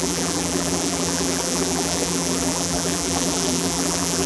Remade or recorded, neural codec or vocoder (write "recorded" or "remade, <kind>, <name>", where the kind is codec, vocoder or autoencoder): remade, vocoder, BigVGAN v2